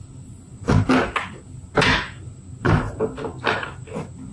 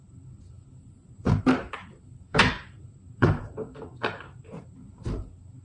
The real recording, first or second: first